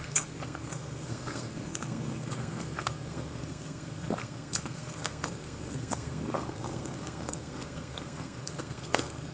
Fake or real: fake